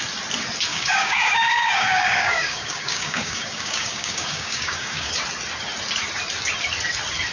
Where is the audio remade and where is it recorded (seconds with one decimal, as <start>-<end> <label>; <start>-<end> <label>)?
0.0-0.7 recorded; 0.7-5.1 remade; 5.1-7.3 recorded